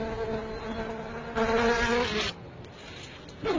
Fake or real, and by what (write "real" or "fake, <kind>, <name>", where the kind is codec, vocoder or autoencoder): real